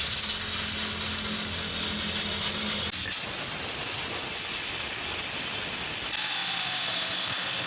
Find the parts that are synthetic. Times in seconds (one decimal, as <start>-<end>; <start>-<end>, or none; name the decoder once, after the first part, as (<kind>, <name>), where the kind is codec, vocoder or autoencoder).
none